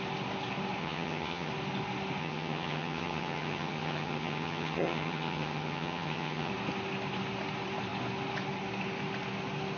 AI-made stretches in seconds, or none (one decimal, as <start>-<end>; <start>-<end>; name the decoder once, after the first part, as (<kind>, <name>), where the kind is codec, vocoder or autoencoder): 0.8-1.5 (vocoder, HiFi-GAN); 2.2-6.5